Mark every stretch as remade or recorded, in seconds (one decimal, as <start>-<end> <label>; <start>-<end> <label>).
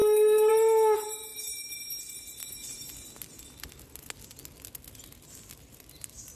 0.0-0.5 remade; 0.5-6.4 recorded